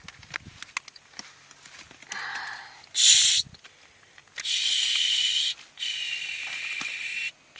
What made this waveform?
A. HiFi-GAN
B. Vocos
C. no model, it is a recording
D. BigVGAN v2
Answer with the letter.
C